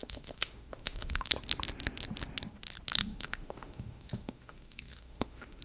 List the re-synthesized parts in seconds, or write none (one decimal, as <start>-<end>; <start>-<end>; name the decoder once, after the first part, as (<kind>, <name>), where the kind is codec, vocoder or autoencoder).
0.0-1.3 (autoencoder, DAC-VAE); 3.0-5.6